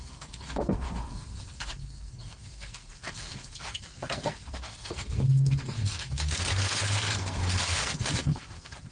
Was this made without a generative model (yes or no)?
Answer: no